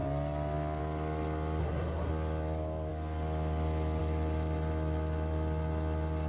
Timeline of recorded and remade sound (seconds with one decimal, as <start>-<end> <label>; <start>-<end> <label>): 0.0-1.6 recorded; 1.6-2.1 remade; 2.1-6.3 recorded